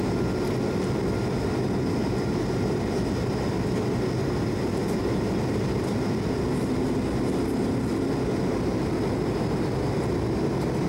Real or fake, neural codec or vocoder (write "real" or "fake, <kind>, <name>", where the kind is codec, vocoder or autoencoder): real